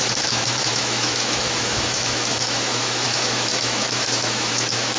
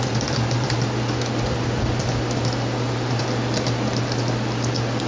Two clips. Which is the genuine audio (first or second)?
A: second